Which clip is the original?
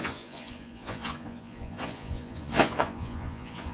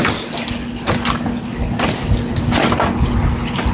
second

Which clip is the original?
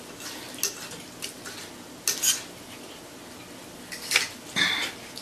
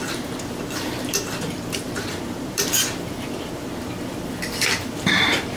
first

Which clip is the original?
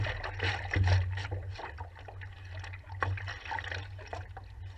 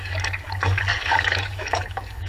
first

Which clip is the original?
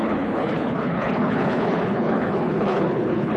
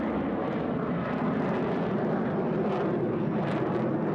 second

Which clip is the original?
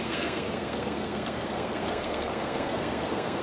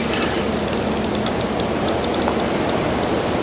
second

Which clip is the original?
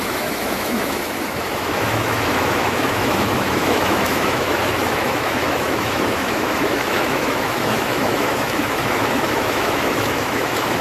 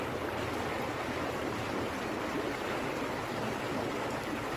second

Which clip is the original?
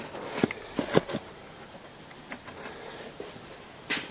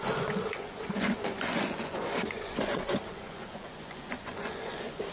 first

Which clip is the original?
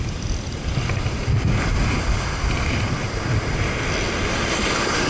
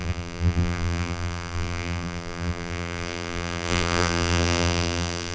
first